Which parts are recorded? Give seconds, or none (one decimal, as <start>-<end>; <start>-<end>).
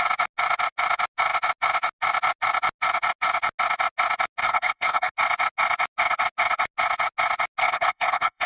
0.0-4.4; 5.1-7.6